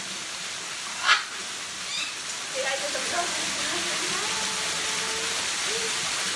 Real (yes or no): yes